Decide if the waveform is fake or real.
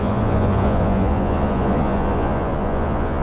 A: fake